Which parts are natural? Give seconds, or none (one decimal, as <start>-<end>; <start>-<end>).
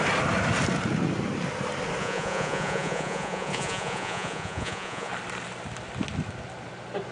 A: 0.0-2.0; 5.1-7.1